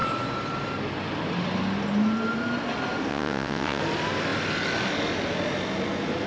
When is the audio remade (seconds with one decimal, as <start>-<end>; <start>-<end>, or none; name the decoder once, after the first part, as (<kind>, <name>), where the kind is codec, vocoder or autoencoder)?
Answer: 3.1-3.8 (vocoder, WaveNeXt)